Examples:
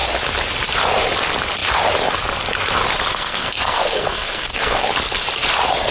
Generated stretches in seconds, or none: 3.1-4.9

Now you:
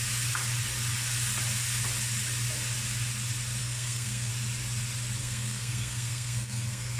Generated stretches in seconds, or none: 3.6-4.3; 5.2-7.0

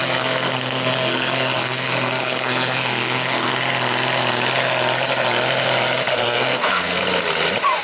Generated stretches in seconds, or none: 0.0-3.5; 6.1-7.0

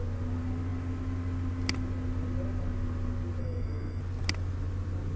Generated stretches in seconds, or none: 3.4-4.0

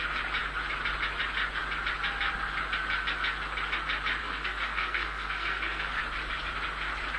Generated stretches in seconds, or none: 4.2-6.0

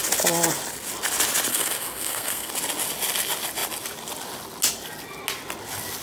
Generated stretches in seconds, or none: 1.5-2.5

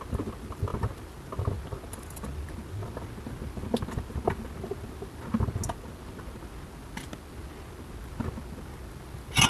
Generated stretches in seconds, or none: none

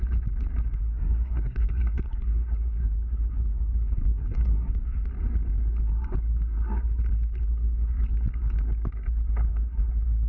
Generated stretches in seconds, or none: 0.7-5.1; 7.4-7.9; 9.4-9.9